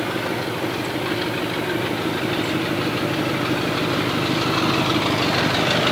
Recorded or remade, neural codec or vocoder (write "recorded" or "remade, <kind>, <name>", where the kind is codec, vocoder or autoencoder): recorded